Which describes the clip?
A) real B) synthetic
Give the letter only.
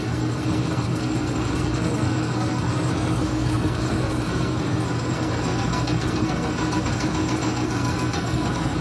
B